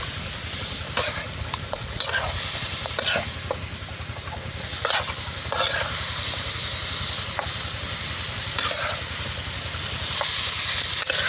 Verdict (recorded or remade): recorded